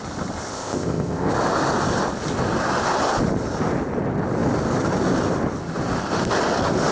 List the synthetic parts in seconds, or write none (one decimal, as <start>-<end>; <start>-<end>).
0.5-1.3